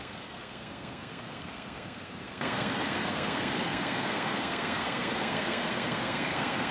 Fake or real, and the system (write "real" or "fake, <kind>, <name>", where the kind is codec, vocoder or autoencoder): fake, codec, SNAC